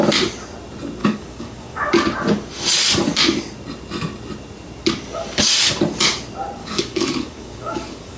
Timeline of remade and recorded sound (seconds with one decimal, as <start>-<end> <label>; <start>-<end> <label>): 0.0-1.0 recorded; 1.0-1.9 remade; 1.9-6.6 recorded; 6.6-8.2 remade